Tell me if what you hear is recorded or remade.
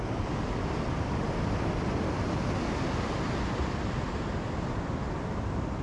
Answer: recorded